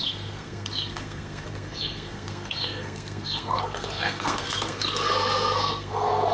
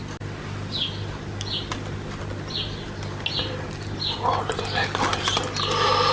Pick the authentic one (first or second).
second